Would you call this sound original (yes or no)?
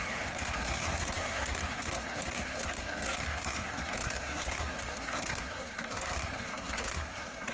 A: no